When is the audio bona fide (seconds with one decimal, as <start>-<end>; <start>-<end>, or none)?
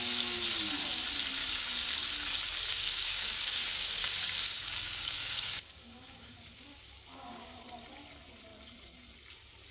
0.0-1.4; 1.9-2.7; 7.6-9.7